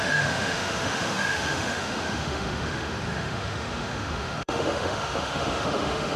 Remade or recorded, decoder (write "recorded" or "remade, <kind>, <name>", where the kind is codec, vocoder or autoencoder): remade, autoencoder, DAC-VAE